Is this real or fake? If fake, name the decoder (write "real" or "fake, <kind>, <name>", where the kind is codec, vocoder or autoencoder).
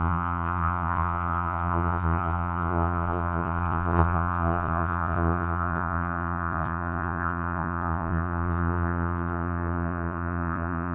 fake, vocoder, Vocos